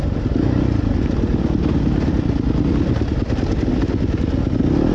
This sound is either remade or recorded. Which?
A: recorded